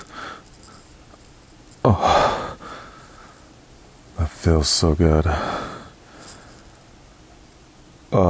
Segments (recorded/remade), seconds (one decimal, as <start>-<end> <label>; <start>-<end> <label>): 0.0-2.1 recorded; 2.1-4.9 remade; 4.9-8.3 recorded